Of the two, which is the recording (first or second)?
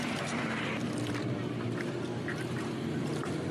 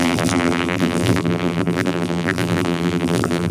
first